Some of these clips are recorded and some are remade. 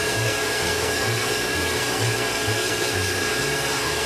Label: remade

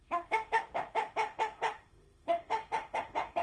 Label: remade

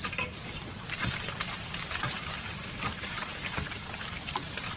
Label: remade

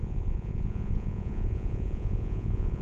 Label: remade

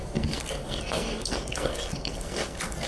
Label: remade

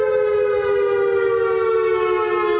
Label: recorded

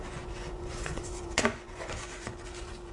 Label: remade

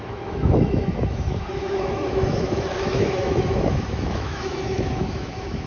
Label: remade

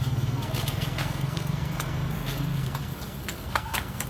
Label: remade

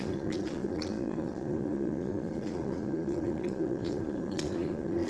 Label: remade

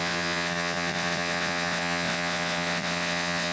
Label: remade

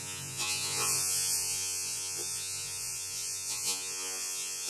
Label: remade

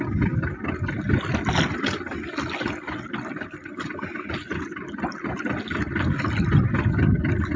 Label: recorded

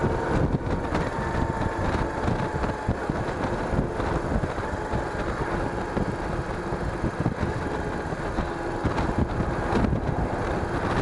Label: recorded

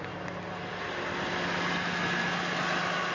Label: recorded